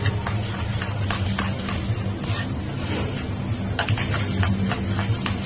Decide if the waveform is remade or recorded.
recorded